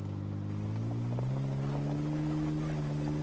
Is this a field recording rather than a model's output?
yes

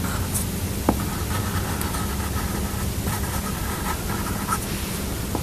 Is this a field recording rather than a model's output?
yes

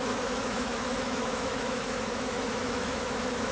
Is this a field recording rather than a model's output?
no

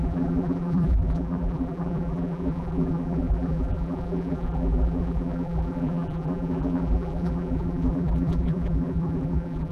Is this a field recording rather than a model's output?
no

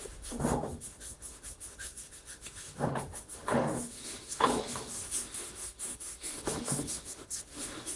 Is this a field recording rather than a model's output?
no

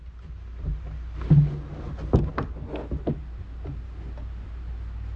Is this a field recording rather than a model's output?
yes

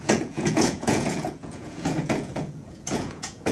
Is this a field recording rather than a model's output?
no